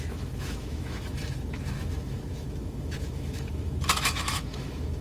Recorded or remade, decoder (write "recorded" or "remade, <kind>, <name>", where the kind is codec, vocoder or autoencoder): remade, autoencoder, DAC-VAE